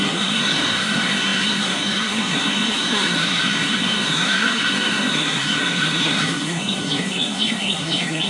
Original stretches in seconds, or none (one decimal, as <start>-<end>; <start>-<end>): none